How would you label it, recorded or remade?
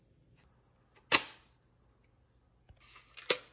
recorded